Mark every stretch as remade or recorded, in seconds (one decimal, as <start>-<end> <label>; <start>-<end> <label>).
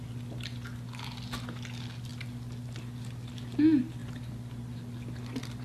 0.0-5.6 recorded